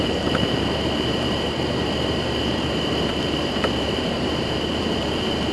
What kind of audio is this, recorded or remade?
remade